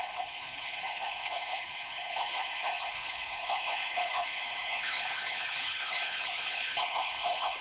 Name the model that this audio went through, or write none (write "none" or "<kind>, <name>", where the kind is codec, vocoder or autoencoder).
codec, HILCodec